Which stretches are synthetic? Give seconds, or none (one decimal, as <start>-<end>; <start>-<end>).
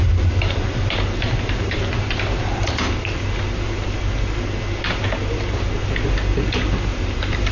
0.0-2.5; 7.0-7.5